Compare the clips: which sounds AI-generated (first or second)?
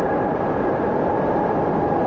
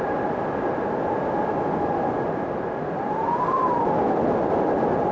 first